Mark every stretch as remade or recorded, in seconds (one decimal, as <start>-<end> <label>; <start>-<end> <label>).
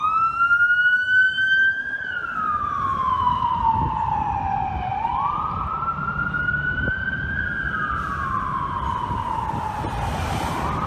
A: 0.0-2.9 recorded; 2.9-3.6 remade; 3.6-10.9 recorded